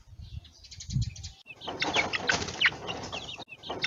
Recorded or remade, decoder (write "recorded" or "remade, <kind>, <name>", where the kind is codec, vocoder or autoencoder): recorded